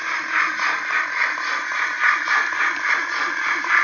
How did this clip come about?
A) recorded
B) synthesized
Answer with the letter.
A